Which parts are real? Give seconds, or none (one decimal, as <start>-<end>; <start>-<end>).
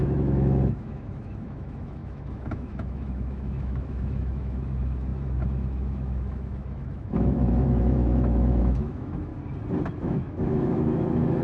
9.3-10.0